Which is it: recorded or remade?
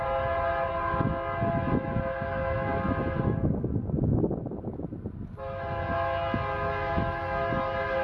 recorded